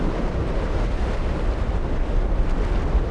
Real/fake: real